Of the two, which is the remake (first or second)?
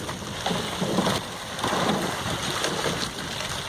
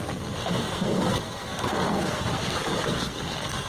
second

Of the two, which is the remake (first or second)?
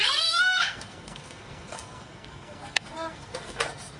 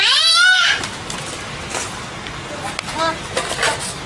first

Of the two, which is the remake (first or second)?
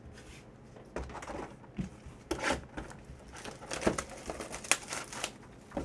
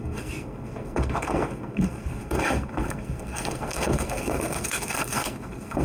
second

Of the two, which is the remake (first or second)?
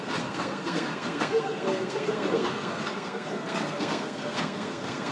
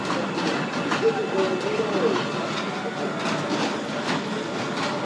first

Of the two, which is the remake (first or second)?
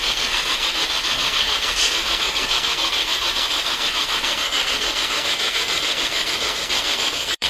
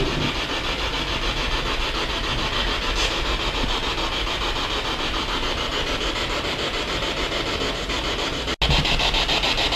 first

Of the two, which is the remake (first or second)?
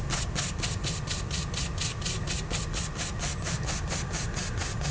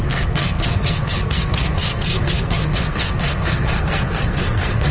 second